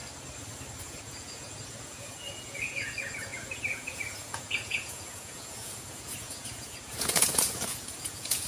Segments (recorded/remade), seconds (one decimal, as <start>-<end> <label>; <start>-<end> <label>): 0.0-0.8 recorded; 0.8-8.5 remade